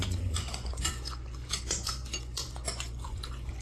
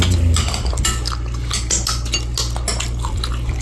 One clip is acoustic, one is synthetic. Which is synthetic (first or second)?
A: first